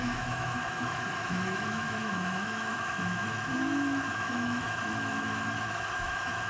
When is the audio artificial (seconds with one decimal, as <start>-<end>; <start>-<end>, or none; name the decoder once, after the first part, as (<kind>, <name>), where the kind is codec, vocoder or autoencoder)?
0.0-6.5 (autoencoder, DAC-VAE)